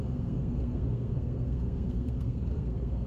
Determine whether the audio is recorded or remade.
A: remade